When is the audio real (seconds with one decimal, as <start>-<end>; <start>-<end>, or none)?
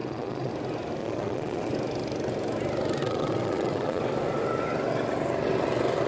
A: 0.5-1.0; 1.7-3.0; 4.0-6.1